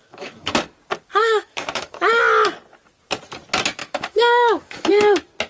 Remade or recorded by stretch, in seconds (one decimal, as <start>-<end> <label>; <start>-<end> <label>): 0.0-0.5 remade; 0.5-1.2 recorded; 1.2-2.2 remade; 2.2-3.8 recorded; 3.8-4.9 remade; 4.9-5.5 recorded